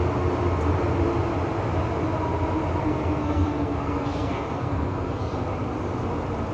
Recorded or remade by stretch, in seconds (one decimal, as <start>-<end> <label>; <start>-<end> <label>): 0.0-2.8 recorded; 2.8-5.3 remade; 5.3-6.5 recorded

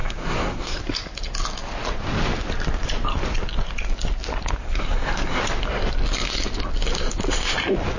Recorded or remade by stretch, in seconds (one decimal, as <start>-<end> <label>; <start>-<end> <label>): 0.0-0.8 remade; 0.8-4.6 recorded; 4.6-5.4 remade; 5.4-8.0 recorded

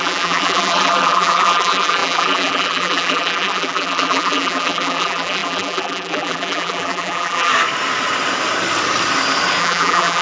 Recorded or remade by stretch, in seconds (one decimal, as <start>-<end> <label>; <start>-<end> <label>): 0.0-7.5 remade; 7.5-9.6 recorded; 9.6-10.2 remade

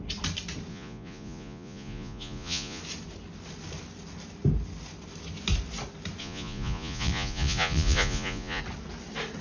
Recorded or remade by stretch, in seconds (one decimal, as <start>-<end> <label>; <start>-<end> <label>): 0.0-0.7 recorded; 0.7-2.8 remade; 2.8-6.2 recorded; 6.2-8.6 remade; 8.6-9.4 recorded

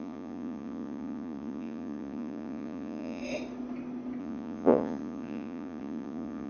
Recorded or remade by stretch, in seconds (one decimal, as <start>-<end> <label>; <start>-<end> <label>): 0.0-3.2 remade; 3.2-4.2 recorded; 4.2-6.5 remade

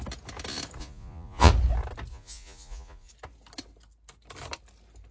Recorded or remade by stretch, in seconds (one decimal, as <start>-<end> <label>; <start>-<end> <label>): 0.0-0.8 recorded; 0.8-1.5 remade; 1.5-2.1 recorded; 2.1-3.1 remade; 3.1-5.1 recorded

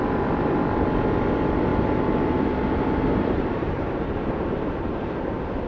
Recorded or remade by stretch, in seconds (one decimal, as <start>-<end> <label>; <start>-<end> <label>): 0.0-1.7 recorded; 1.7-3.8 remade; 3.8-5.7 recorded